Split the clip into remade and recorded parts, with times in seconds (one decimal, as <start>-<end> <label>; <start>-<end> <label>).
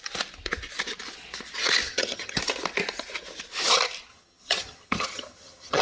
0.0-1.9 recorded; 1.9-2.4 remade; 2.4-4.1 recorded; 4.1-5.8 remade